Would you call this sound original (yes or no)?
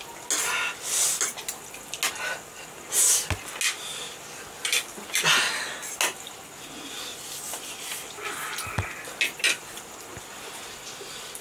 yes